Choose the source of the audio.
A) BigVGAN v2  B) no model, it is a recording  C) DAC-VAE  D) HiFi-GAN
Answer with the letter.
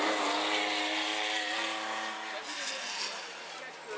B